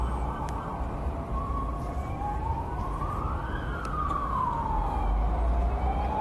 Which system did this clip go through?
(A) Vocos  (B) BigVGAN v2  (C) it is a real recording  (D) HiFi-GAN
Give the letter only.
C